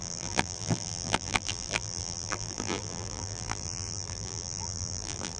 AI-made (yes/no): yes